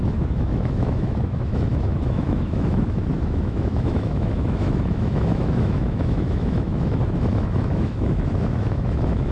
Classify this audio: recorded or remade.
remade